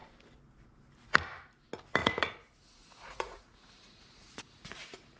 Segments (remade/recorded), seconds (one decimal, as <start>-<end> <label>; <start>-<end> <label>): 0.0-2.0 recorded; 2.0-5.2 remade